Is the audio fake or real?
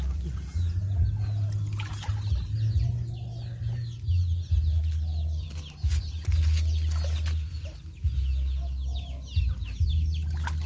real